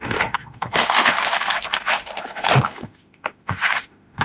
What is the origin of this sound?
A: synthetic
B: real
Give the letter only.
A